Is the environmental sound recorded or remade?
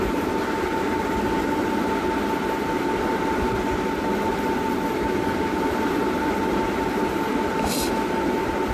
recorded